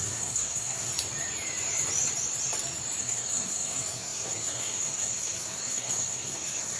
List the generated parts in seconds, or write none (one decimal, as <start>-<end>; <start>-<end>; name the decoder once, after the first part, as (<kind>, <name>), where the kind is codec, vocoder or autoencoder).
0.0-0.9 (codec, SNAC); 3.0-6.8